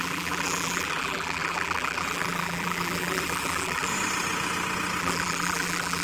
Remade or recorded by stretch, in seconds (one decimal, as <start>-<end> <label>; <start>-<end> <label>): 0.0-3.9 remade; 3.9-5.0 recorded; 5.0-6.0 remade